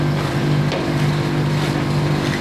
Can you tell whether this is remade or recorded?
recorded